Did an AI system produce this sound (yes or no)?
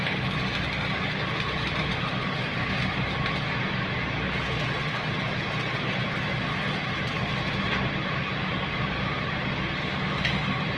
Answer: no